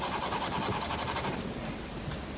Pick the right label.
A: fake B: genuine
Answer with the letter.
B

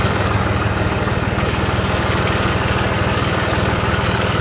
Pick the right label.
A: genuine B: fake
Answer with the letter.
B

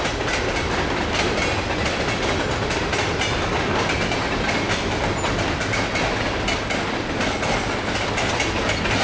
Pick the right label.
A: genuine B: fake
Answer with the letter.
A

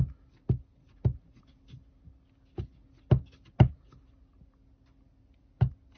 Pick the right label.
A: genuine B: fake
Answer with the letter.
A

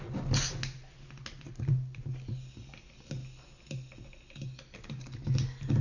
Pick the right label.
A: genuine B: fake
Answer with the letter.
A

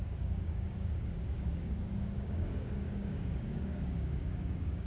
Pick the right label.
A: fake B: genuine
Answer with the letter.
A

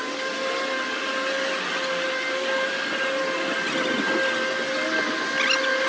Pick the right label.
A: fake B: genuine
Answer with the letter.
B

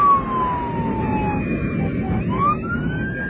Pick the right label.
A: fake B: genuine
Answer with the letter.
B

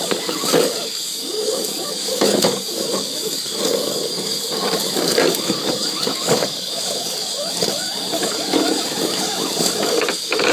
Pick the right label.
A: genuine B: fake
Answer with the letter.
B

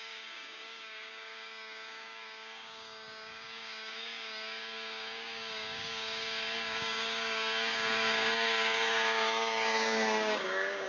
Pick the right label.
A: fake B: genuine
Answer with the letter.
A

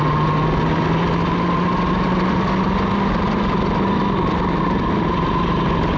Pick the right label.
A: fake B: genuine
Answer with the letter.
B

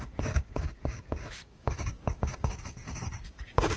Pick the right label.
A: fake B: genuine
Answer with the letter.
A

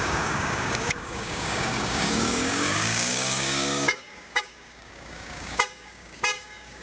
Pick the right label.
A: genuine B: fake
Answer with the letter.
B